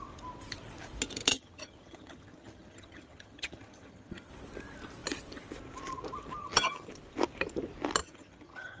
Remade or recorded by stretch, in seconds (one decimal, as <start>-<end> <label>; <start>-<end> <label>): 0.0-1.3 recorded; 1.3-4.3 remade; 4.3-6.4 recorded; 6.4-6.9 remade; 6.9-8.0 recorded; 8.0-8.8 remade